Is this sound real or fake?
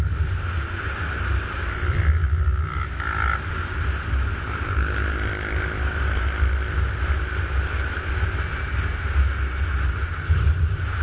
real